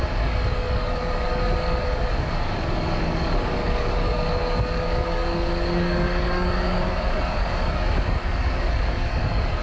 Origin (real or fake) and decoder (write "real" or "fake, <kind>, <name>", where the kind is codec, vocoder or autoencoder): fake, codec, DAC